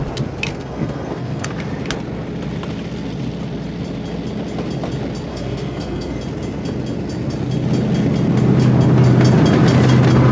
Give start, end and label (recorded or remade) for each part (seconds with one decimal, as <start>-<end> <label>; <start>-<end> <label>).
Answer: 0.0-0.5 recorded; 0.5-1.5 remade; 1.5-5.3 recorded; 5.3-6.2 remade; 6.2-10.3 recorded